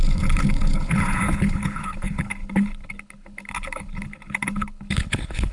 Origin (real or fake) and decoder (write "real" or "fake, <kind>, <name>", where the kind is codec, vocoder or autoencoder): fake, codec, HILCodec